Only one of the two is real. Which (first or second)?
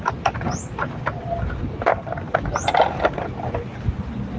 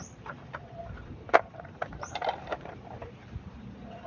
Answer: first